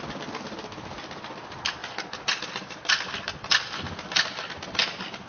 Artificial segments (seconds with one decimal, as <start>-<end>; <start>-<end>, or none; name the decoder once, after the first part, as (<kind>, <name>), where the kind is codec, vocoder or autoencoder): none

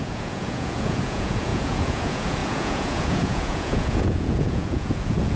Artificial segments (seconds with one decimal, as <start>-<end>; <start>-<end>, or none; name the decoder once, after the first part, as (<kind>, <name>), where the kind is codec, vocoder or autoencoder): 0.0-5.4 (vocoder, Vocos)